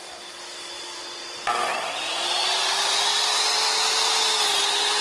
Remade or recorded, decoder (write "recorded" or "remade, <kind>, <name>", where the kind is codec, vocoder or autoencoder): recorded